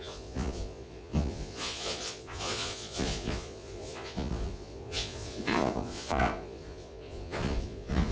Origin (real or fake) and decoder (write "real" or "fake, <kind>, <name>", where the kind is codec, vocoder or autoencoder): fake, vocoder, Vocos